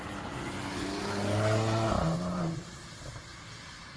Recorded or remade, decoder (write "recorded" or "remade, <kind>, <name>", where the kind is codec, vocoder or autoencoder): recorded